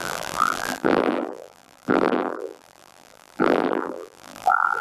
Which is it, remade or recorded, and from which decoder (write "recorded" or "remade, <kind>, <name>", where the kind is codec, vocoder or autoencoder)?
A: remade, vocoder, BigVGAN v2